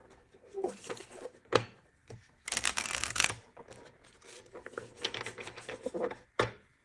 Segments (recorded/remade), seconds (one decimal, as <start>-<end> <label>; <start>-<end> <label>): 0.0-3.3 remade; 3.3-4.6 recorded; 4.6-5.7 remade; 5.7-6.8 recorded